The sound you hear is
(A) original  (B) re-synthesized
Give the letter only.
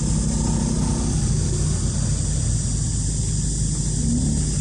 A